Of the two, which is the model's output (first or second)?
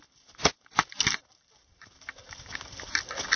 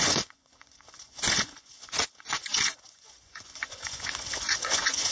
second